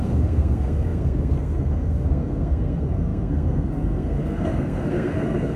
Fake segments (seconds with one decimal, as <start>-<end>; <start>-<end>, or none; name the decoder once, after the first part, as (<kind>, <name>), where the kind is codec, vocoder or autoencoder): 0.0-5.6 (codec, SNAC)